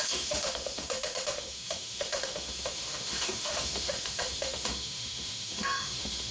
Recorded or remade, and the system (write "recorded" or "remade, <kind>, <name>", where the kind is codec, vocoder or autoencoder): remade, autoencoder, DAC-VAE